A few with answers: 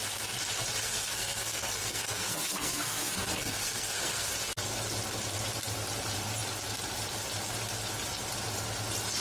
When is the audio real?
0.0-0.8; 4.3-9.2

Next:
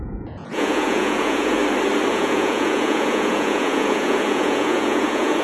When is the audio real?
1.6-2.1